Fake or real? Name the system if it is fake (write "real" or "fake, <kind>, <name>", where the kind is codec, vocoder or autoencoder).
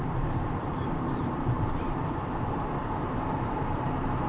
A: fake, vocoder, BigVGAN v2